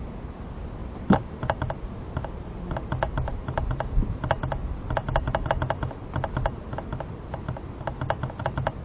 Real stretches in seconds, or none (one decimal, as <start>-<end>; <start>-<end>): 0.0-8.8